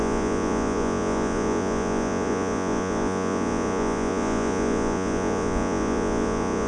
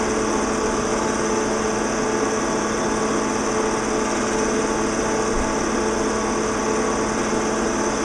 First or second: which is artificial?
first